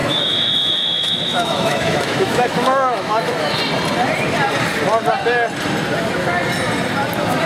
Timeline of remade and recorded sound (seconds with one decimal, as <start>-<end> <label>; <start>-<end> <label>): 0.0-3.6 remade; 3.6-7.5 recorded

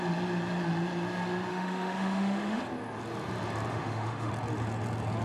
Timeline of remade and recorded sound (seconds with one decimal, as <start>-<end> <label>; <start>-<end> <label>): 0.0-1.5 recorded; 1.5-2.6 remade; 2.6-3.7 recorded; 3.7-4.3 remade; 4.3-5.2 recorded

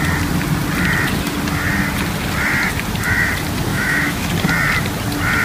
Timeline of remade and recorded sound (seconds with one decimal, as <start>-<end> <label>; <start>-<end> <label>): 0.0-3.7 recorded; 3.7-4.3 remade; 4.3-5.4 recorded

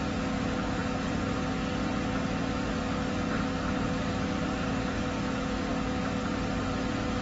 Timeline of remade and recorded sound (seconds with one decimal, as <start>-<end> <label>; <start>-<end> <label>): 0.0-7.2 recorded

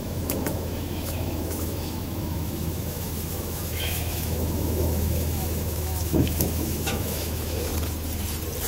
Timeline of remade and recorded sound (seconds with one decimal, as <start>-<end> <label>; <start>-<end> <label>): 0.0-7.7 remade; 7.7-8.7 recorded

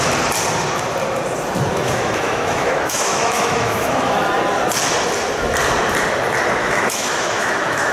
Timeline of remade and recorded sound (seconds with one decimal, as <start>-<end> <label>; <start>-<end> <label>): 0.0-1.7 recorded; 1.7-4.2 remade; 4.2-6.6 recorded; 6.6-7.9 remade

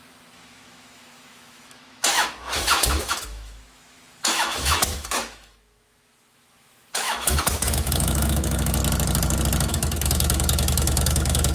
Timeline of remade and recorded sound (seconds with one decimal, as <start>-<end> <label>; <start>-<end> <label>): 0.0-8.8 remade; 8.8-9.7 recorded; 9.7-11.5 remade